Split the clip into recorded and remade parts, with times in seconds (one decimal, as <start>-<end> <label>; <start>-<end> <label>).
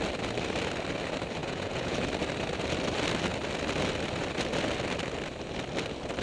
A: 0.0-1.4 recorded; 1.4-2.0 remade; 2.0-6.2 recorded